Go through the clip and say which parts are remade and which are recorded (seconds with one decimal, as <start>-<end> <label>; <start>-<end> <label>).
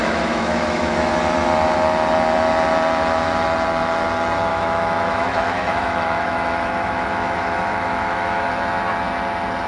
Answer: 0.0-1.1 remade; 1.1-4.5 recorded; 4.5-8.5 remade; 8.5-9.7 recorded